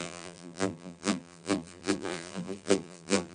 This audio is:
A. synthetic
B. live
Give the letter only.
A